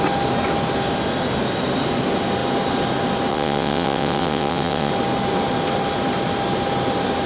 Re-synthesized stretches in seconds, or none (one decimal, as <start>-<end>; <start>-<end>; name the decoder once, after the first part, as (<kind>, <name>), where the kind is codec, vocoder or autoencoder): 3.3-4.9 (vocoder, WaveNeXt)